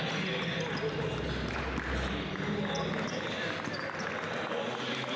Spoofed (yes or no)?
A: no